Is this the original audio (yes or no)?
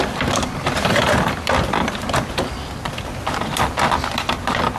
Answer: no